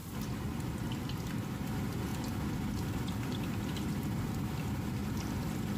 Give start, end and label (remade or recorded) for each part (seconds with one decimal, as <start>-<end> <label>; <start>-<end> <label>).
0.0-1.5 recorded; 1.5-2.1 remade; 2.1-3.2 recorded; 3.2-5.8 remade